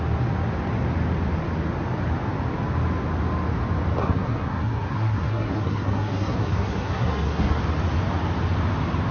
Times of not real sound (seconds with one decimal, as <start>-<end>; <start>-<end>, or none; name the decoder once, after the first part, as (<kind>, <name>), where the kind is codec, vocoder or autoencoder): 4.0-7.6 (codec, SNAC)